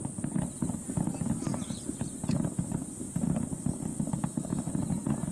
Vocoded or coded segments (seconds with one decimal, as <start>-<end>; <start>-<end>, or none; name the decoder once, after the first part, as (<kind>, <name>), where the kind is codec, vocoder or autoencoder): none